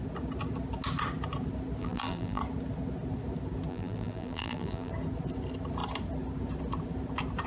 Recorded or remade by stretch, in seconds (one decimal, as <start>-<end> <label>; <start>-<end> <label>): 0.0-1.8 recorded; 1.8-2.4 remade; 2.4-3.7 recorded; 3.7-4.9 remade; 4.9-7.5 recorded